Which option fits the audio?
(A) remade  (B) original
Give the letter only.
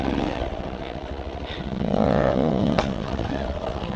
A